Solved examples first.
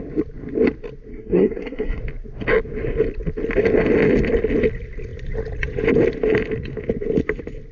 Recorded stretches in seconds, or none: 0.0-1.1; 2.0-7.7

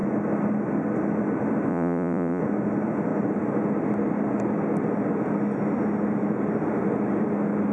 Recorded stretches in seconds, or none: 0.0-1.7; 2.4-7.7

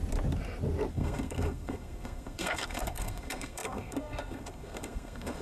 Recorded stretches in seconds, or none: 0.0-0.9

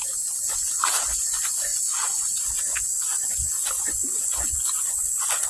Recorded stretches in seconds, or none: 0.0-5.5

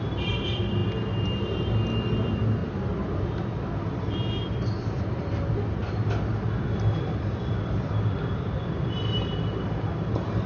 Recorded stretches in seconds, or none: 0.8-1.4; 5.8-7.4

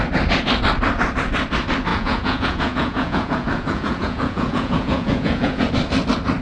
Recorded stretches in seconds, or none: 0.0-1.9; 5.7-6.4

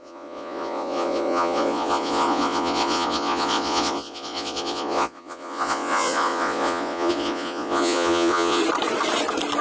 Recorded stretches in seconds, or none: 8.6-9.6